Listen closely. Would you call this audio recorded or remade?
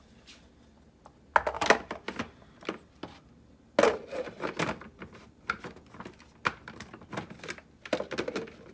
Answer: recorded